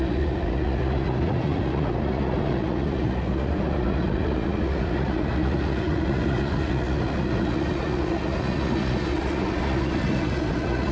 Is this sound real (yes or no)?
no